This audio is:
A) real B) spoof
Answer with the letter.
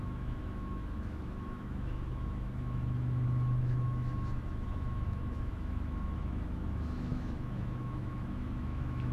B